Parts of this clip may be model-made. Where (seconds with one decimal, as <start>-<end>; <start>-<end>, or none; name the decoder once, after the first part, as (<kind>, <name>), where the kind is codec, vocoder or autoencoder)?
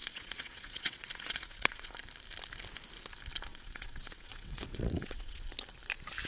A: 0.0-1.9 (vocoder, WaveNeXt); 3.5-5.4